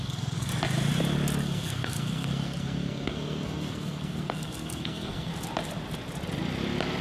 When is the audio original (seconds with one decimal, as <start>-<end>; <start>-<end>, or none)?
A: 0.5-1.4; 5.3-7.0